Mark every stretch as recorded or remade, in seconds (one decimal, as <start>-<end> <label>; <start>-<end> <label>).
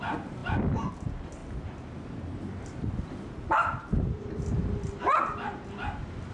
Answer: 0.0-6.3 recorded